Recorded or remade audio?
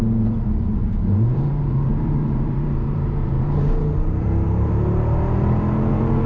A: remade